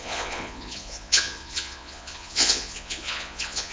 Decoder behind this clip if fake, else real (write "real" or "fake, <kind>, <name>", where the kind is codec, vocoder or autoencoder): fake, vocoder, Vocos